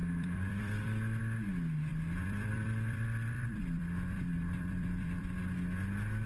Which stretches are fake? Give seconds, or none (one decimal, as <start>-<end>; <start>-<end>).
0.0-1.2; 1.9-5.4